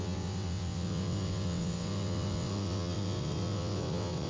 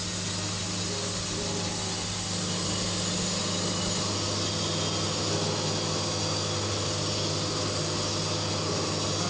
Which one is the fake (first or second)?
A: first